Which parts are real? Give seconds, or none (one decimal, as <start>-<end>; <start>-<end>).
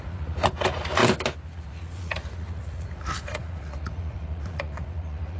1.0-1.5